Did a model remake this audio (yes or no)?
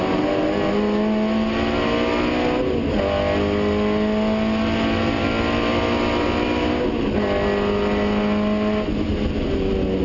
no